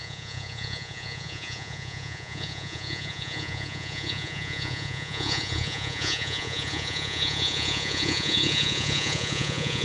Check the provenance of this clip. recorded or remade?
remade